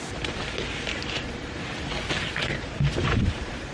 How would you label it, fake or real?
fake